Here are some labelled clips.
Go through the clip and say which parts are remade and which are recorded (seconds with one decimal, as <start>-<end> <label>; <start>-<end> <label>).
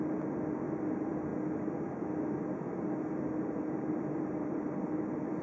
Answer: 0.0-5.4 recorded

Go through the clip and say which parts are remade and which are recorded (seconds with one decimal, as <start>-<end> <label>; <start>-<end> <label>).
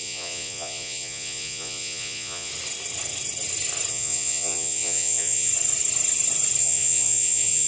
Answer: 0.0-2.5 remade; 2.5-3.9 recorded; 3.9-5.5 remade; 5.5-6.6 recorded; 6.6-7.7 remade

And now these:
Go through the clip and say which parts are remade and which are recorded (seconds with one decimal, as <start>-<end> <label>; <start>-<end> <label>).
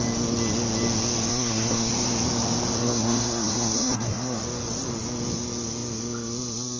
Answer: 0.0-1.3 recorded; 1.3-1.9 remade; 1.9-2.8 recorded; 2.8-4.4 remade; 4.4-6.8 recorded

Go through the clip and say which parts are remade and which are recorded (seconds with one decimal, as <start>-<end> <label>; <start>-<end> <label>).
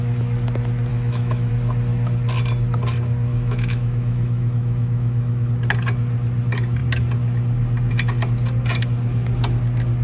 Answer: 0.0-0.9 recorded; 0.9-1.5 remade; 1.5-3.3 recorded; 3.3-5.5 remade; 5.5-10.0 recorded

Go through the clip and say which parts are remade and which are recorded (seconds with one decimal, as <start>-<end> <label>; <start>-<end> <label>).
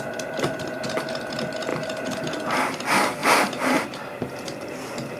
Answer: 0.0-1.7 recorded; 1.7-2.2 remade; 2.2-3.2 recorded; 3.2-4.4 remade; 4.4-5.2 recorded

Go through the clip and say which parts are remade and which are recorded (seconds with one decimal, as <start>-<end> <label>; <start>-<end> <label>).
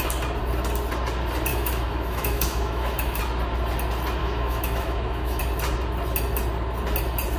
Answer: 0.0-1.5 recorded; 1.5-3.2 remade; 3.2-4.2 recorded; 4.2-5.4 remade; 5.4-7.4 recorded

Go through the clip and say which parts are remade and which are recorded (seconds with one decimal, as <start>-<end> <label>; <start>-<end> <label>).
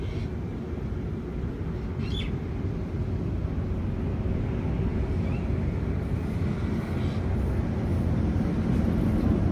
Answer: 0.0-9.5 recorded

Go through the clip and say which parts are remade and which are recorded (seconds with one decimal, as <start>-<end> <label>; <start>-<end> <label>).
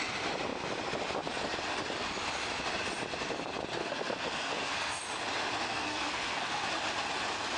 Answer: 0.0-3.8 recorded; 3.8-5.0 remade; 5.0-5.7 recorded; 5.7-6.6 remade; 6.6-7.6 recorded